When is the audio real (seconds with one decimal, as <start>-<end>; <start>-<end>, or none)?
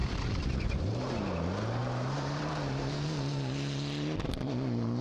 1.1-1.8; 2.4-5.0